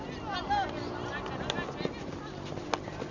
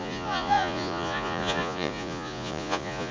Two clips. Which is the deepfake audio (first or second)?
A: second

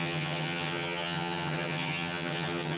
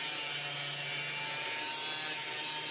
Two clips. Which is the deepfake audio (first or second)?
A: first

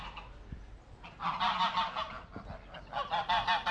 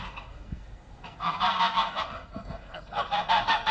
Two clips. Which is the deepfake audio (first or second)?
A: second